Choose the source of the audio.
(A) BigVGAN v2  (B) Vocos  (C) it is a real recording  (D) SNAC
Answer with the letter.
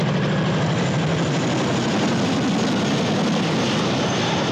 C